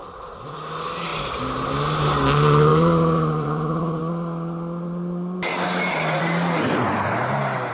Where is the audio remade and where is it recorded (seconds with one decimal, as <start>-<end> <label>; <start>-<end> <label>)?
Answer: 0.0-2.7 recorded; 2.7-4.0 remade; 4.0-5.5 recorded; 5.5-6.2 remade; 6.2-7.7 recorded